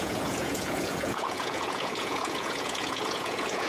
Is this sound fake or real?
fake